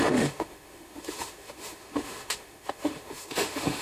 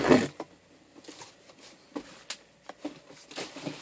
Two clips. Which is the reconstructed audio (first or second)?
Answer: first